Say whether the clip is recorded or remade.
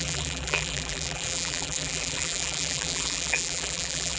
remade